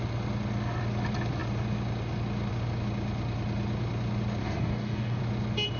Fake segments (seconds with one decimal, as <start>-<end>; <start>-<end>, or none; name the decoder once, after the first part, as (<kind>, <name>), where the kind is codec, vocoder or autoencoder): 4.4-5.2 (codec, DAC)